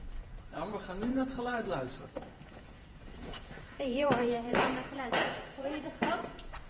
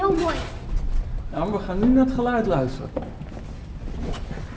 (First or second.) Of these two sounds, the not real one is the first